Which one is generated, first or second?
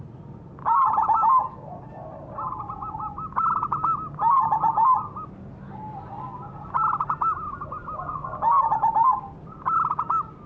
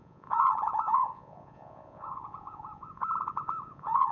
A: second